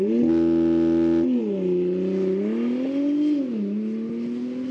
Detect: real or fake real